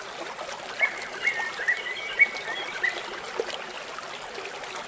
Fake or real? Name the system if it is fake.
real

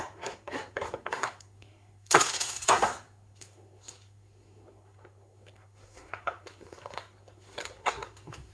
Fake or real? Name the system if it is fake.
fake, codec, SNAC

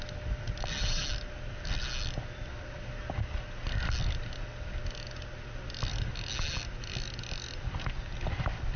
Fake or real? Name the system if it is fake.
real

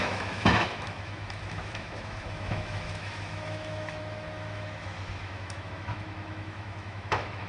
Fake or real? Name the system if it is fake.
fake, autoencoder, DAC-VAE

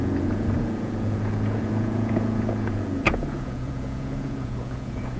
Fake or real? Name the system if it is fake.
fake, vocoder, Vocos